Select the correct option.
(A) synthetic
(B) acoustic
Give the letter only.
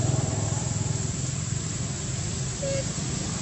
A